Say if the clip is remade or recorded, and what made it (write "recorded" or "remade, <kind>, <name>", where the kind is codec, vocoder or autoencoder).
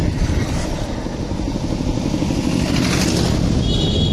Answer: recorded